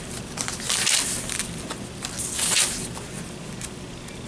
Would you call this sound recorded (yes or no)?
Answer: yes